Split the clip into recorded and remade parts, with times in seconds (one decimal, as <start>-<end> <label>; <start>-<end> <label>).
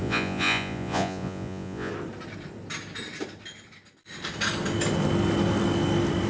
0.0-1.9 remade; 1.9-6.3 recorded